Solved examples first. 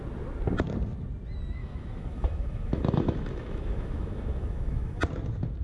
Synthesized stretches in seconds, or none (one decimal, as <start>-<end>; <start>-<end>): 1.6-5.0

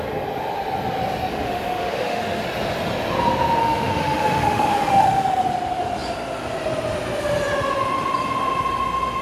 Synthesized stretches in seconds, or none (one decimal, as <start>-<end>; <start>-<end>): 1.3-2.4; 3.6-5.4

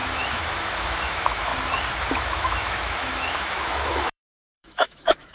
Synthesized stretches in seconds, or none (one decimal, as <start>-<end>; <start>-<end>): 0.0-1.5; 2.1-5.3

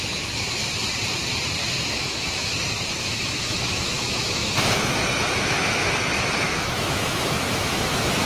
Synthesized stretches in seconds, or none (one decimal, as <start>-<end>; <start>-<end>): 0.0-0.6; 1.8-2.5; 3.0-8.3

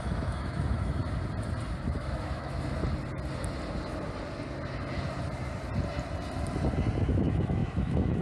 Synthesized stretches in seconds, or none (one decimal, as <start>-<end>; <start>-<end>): 0.0-1.0; 1.8-2.8; 7.1-8.2